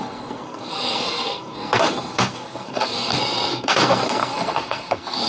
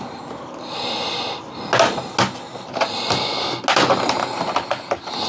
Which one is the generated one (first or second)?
first